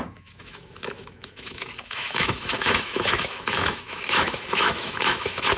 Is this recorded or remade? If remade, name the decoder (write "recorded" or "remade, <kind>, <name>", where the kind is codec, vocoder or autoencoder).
remade, autoencoder, DAC-VAE